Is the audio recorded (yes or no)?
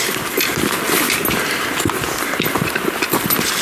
yes